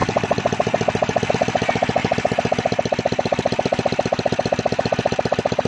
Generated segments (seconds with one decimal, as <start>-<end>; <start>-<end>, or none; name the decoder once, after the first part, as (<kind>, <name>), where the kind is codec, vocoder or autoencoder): 2.0-5.7 (vocoder, BigVGAN v2)

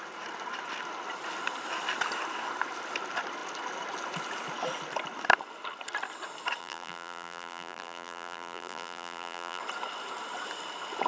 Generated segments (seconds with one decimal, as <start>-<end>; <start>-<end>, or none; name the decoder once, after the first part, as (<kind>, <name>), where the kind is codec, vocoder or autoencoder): 6.6-9.6 (vocoder, BigVGAN v2)

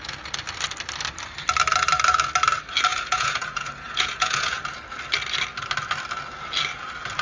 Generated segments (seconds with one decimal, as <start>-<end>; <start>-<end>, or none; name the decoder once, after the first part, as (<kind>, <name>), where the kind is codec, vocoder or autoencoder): 2.9-4.8 (vocoder, Vocos)